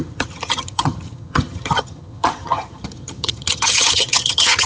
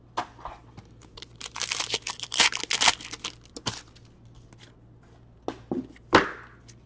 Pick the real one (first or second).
second